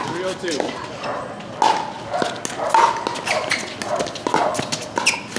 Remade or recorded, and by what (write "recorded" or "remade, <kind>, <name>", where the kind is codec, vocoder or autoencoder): recorded